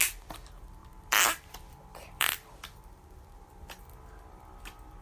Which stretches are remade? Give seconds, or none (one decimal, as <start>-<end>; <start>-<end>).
0.8-3.8